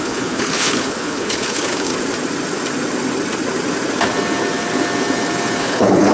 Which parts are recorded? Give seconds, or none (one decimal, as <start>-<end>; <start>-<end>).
1.9-5.6